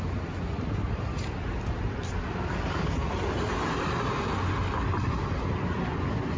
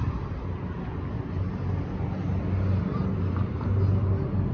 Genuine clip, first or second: second